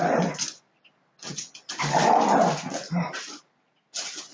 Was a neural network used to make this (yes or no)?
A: no